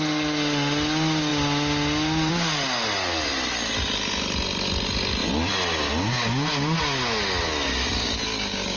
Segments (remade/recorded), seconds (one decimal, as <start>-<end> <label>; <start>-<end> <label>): 0.0-8.0 recorded; 8.0-8.8 remade